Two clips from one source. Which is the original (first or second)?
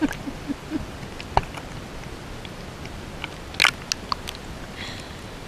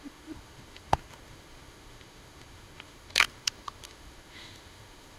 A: first